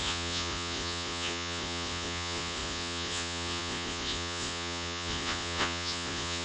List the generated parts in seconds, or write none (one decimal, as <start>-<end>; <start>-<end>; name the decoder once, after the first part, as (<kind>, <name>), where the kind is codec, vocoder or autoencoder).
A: 0.0-6.4 (vocoder, Vocos)